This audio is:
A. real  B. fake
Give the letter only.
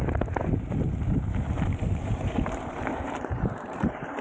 B